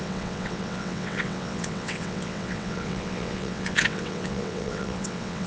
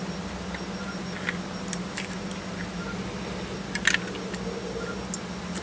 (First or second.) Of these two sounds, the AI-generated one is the first